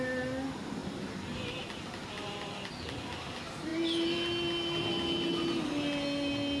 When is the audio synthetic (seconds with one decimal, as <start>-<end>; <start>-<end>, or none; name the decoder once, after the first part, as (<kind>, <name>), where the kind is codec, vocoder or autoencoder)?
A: none